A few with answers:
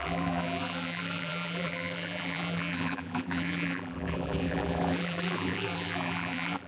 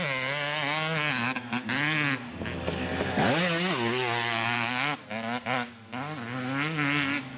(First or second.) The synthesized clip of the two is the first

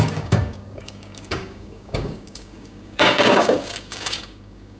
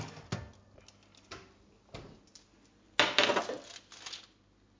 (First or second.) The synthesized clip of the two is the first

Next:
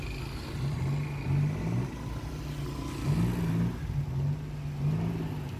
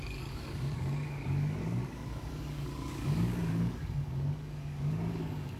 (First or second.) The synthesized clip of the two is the second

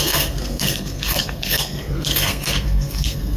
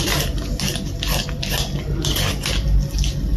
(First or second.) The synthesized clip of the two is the first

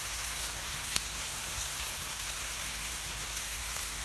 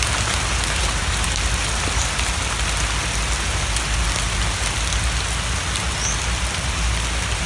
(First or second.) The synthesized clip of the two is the first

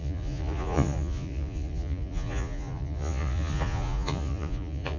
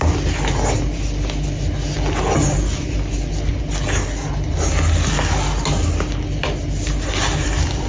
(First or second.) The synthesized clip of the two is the first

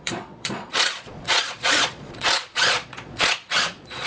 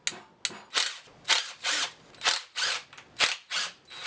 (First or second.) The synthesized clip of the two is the first